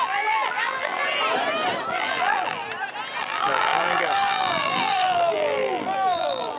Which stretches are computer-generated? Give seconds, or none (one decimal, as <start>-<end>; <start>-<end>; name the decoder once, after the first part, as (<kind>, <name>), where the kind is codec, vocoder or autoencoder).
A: 0.0-1.0 (vocoder, BigVGAN v2); 1.9-2.6; 3.2-6.6